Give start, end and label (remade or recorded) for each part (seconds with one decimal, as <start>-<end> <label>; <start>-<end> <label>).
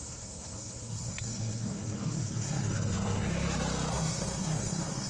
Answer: 0.0-3.3 remade; 3.3-3.9 recorded; 3.9-5.1 remade